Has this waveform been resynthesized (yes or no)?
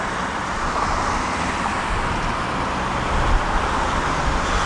no